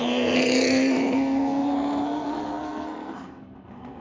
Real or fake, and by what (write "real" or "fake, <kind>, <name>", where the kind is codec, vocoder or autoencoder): fake, codec, SNAC